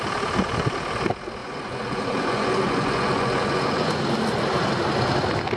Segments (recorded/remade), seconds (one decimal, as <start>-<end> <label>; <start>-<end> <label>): 0.0-1.4 recorded; 1.4-4.0 remade; 4.0-5.6 recorded